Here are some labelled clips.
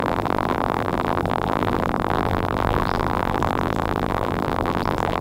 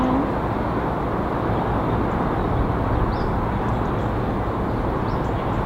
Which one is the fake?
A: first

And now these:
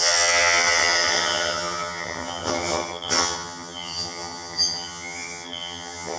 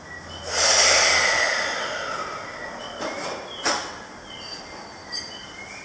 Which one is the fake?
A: first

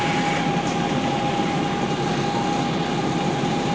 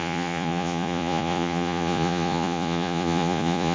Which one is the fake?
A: second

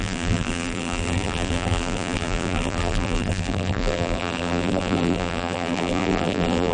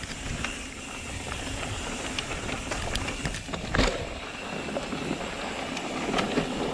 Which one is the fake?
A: first